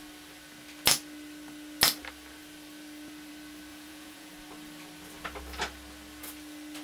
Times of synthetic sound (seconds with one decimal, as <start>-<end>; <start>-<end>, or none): 3.7-4.3